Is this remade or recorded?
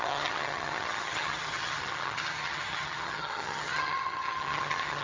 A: remade